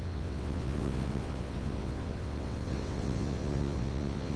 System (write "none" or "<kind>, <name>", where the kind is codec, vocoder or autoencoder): vocoder, WaveNeXt